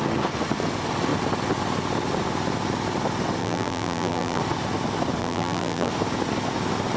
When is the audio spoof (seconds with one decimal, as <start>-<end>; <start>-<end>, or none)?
3.4-4.4; 5.2-5.9